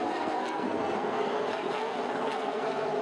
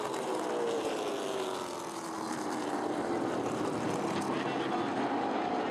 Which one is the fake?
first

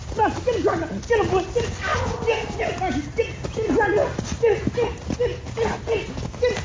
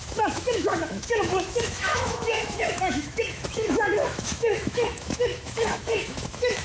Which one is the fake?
second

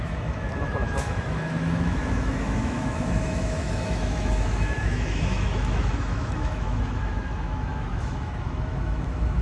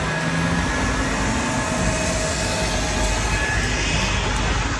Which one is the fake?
first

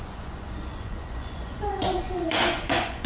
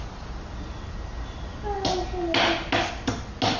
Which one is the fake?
first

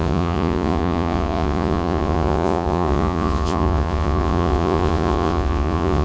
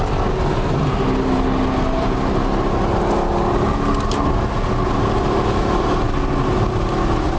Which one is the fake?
first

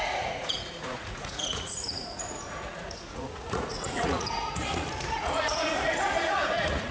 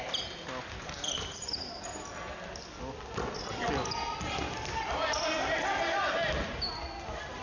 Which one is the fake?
first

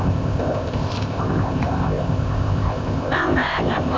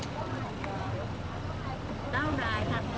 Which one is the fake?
first